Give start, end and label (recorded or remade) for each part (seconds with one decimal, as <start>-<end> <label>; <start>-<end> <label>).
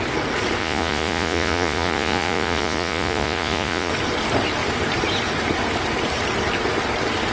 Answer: 0.0-0.6 recorded; 0.6-3.9 remade; 3.9-7.3 recorded